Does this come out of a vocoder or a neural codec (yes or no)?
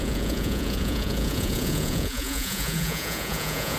yes